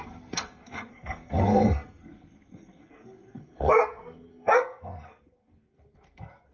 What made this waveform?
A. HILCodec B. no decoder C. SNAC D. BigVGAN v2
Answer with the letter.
C